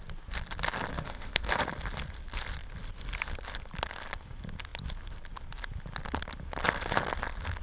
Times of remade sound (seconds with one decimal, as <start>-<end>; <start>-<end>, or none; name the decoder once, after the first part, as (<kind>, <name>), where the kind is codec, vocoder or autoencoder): 0.9-1.6 (autoencoder, DAC-VAE)